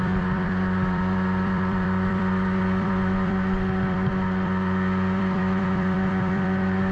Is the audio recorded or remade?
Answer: remade